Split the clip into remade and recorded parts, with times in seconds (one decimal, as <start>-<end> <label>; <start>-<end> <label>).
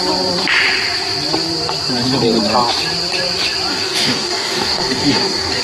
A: 0.0-3.7 recorded; 3.7-5.6 remade